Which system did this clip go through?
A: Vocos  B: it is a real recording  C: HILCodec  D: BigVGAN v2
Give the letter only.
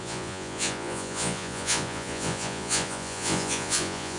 A